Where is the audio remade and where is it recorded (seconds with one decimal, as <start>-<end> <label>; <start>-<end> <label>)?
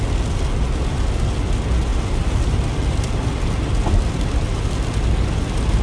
0.0-5.8 recorded